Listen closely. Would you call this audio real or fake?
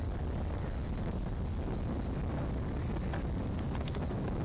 real